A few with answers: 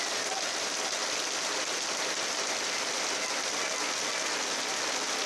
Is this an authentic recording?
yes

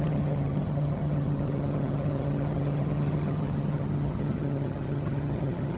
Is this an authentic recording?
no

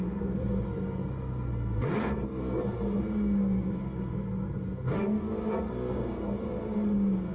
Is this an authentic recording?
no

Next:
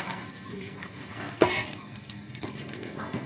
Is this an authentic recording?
no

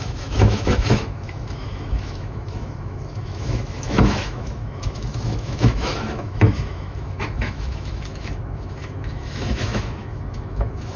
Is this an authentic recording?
no